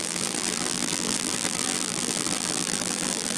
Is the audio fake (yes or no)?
yes